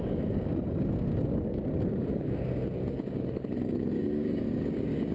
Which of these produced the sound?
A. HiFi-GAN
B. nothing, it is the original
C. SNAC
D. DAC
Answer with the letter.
D